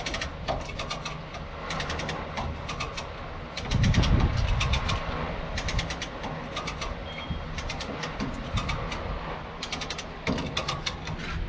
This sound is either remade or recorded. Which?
recorded